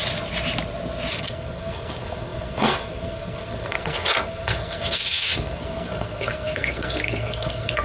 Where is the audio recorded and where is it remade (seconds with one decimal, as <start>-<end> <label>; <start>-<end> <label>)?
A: 0.0-1.1 recorded; 1.1-7.8 remade